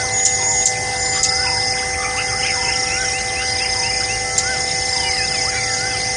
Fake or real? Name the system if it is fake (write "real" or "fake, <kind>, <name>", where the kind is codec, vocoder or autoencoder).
real